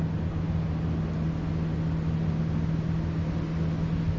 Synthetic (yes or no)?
no